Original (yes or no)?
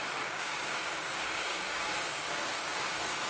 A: no